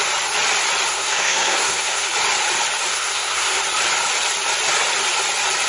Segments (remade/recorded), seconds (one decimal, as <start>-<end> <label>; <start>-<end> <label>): 0.0-0.9 recorded; 0.9-2.1 remade; 2.1-2.9 recorded; 2.9-3.6 remade; 3.6-5.7 recorded